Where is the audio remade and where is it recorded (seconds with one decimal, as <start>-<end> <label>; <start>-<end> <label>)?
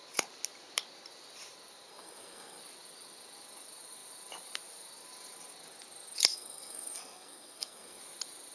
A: 0.0-1.9 recorded; 1.9-2.6 remade; 2.6-6.3 recorded; 6.3-8.0 remade; 8.0-8.5 recorded